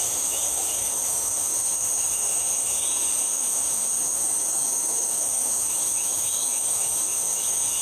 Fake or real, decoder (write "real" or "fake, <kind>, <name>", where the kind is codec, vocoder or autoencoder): fake, autoencoder, DAC-VAE